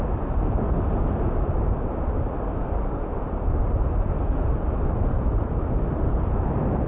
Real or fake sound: real